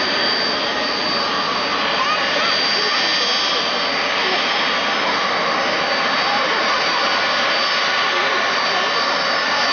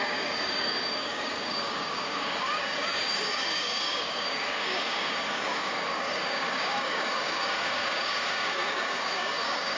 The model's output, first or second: second